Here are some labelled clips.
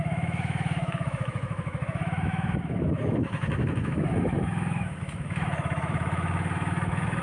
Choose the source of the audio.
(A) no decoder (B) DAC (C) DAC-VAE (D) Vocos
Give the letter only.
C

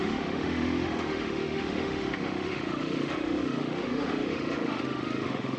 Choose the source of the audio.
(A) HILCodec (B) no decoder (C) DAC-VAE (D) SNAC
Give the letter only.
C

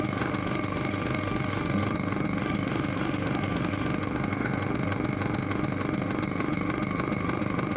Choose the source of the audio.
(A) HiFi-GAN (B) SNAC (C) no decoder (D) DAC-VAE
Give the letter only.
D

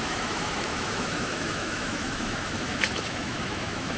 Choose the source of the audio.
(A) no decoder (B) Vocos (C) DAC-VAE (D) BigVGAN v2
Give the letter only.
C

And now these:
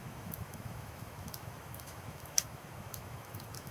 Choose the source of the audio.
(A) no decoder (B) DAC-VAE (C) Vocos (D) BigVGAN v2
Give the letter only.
B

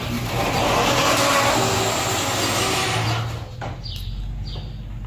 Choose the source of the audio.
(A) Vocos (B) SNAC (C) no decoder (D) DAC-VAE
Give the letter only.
C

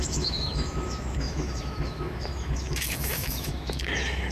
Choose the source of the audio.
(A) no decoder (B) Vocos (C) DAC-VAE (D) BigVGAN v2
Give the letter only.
C